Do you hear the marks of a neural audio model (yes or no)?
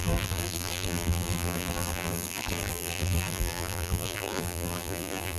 yes